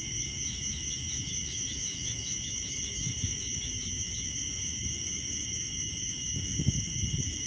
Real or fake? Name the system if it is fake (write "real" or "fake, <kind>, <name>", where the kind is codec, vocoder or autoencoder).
fake, autoencoder, DAC-VAE